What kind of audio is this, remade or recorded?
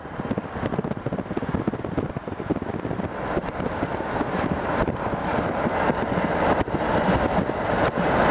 recorded